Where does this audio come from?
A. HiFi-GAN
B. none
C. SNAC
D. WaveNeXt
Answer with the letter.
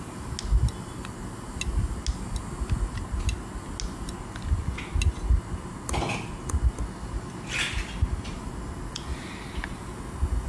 B